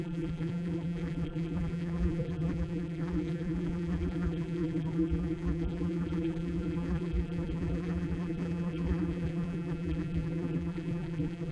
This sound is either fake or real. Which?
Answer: fake